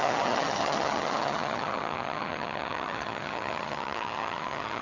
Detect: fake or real fake